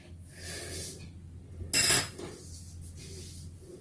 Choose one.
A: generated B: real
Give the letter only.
B